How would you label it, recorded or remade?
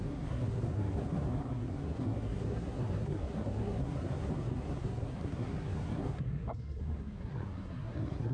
remade